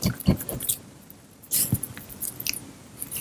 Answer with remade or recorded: recorded